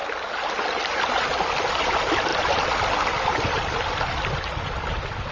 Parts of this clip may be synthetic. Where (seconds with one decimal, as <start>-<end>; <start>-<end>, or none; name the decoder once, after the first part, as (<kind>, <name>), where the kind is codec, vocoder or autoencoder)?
2.3-4.6 (vocoder, BigVGAN v2)